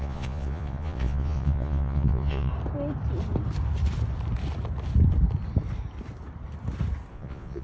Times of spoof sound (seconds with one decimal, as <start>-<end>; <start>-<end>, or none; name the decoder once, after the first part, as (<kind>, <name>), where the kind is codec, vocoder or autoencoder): 0.0-2.5 (vocoder, Vocos); 7.1-7.6